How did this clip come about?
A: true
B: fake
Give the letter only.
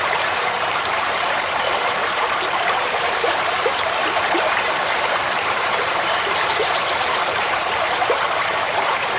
B